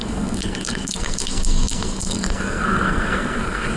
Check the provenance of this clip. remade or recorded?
remade